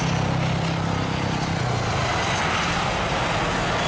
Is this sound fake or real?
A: real